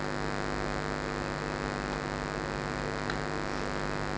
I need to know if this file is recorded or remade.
recorded